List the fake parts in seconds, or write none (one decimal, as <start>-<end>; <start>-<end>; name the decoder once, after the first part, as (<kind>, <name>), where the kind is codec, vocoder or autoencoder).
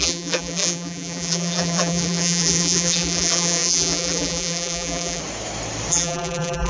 0.0-5.2 (vocoder, BigVGAN v2); 5.9-6.7